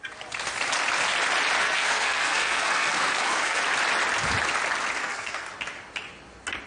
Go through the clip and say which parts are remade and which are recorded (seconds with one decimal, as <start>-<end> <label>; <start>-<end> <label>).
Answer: 0.0-1.6 recorded; 1.6-3.6 remade; 3.6-5.0 recorded; 5.0-5.5 remade; 5.5-6.7 recorded